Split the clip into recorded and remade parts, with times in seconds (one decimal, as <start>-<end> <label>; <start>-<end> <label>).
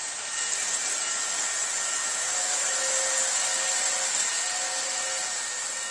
0.0-2.0 recorded; 2.0-3.0 remade; 3.0-5.9 recorded